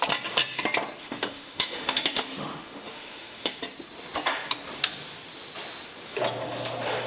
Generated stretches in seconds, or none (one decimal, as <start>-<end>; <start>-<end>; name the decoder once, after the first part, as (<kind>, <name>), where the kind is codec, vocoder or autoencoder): 1.0-3.6 (autoencoder, DAC-VAE)